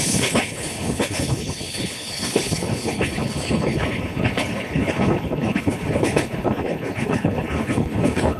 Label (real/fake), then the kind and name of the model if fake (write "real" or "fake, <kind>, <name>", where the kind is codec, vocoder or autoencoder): fake, codec, HILCodec